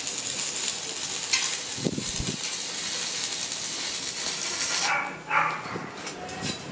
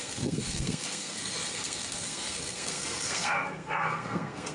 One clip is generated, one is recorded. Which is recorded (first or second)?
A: first